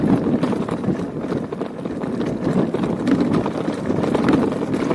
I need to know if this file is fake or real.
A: real